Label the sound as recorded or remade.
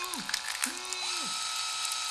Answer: recorded